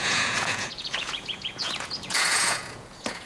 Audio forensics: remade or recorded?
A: remade